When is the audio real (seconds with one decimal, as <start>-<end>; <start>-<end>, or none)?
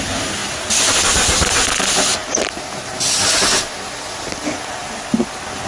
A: 0.0-5.7